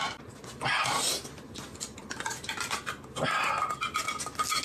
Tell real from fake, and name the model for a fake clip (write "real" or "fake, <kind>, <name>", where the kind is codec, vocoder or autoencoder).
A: real